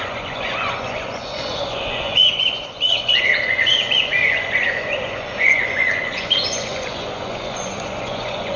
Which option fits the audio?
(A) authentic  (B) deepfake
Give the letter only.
B